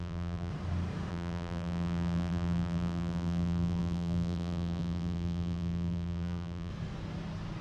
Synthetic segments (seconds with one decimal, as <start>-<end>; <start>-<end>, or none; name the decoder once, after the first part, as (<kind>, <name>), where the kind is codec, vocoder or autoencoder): 0.0-0.5 (vocoder, BigVGAN v2); 1.1-6.7